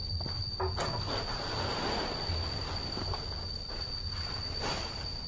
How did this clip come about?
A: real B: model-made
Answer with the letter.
A